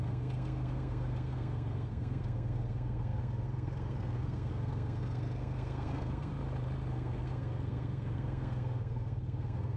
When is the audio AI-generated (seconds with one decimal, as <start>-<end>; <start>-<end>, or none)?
0.0-6.3; 6.9-9.8